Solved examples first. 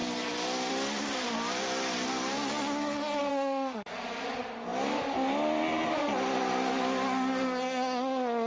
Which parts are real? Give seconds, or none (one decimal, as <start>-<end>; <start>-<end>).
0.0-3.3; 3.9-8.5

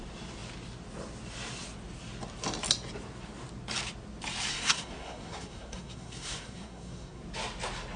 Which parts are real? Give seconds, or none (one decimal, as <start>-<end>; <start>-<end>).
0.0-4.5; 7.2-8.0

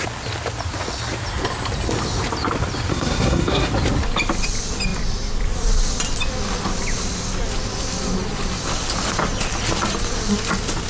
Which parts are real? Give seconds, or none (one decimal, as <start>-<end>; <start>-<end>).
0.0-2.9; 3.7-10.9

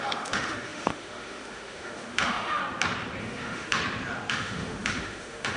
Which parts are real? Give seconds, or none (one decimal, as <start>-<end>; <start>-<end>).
2.6-3.2; 3.8-4.3